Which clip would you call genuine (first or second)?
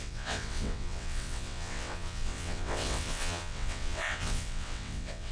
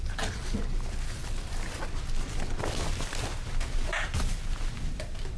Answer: second